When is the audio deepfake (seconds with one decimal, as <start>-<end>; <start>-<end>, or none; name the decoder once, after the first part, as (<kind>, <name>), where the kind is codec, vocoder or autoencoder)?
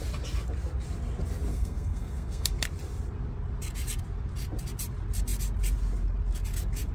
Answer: 1.5-2.5 (codec, SNAC)